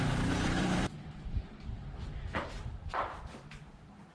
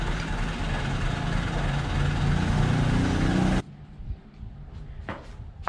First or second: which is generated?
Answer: first